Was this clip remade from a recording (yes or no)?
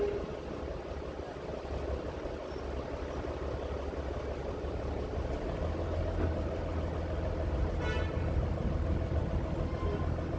no